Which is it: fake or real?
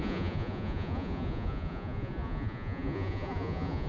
fake